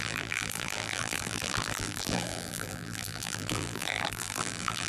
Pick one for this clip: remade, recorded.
remade